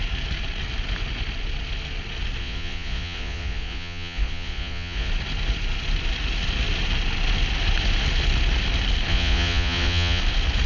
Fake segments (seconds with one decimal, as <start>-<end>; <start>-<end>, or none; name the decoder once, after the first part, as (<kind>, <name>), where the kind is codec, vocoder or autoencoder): 2.4-5.1 (vocoder, Vocos); 9.1-10.2